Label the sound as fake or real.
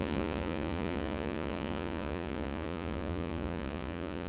fake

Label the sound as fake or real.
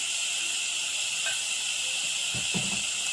real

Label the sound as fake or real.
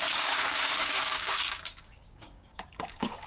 fake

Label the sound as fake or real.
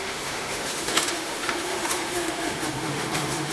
fake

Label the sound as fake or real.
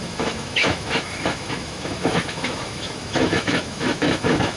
fake